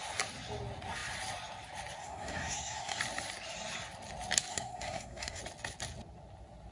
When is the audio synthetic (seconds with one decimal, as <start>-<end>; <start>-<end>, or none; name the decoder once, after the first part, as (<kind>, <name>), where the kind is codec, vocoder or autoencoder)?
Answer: 2.0-3.0 (codec, SNAC); 4.5-5.4